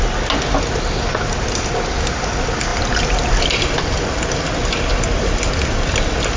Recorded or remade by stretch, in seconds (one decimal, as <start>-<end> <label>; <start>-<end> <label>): 0.0-6.4 recorded

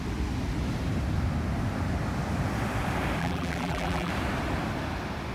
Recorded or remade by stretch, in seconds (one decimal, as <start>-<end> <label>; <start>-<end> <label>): 0.0-3.2 recorded; 3.2-4.1 remade; 4.1-5.3 recorded

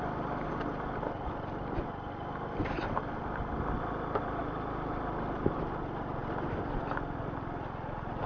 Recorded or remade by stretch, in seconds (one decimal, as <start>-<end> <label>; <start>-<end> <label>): 0.0-8.3 recorded

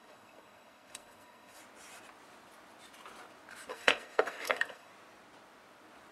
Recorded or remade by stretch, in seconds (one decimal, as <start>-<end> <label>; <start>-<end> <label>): 0.0-1.6 remade; 1.6-3.7 recorded; 3.7-4.9 remade; 4.9-6.1 recorded

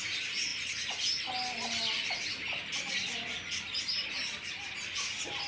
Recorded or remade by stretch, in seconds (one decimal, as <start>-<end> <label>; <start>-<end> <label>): 0.0-5.5 recorded

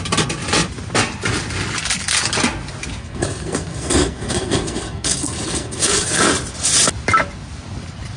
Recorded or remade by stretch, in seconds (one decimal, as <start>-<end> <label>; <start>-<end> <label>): 0.0-3.0 recorded; 3.0-6.2 remade; 6.2-8.2 recorded

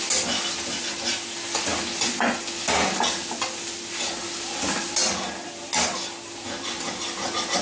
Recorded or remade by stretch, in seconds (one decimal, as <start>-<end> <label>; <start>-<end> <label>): 0.0-7.6 recorded